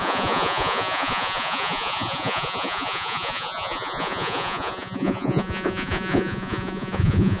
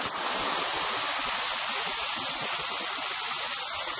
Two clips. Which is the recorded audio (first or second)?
second